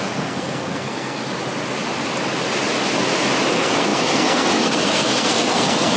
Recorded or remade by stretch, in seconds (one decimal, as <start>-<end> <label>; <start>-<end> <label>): 0.0-1.2 remade; 1.2-3.5 recorded; 3.5-6.0 remade